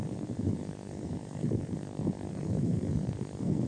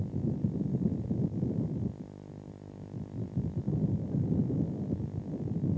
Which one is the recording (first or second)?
second